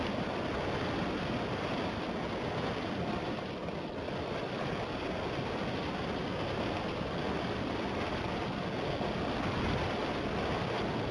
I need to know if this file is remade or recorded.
recorded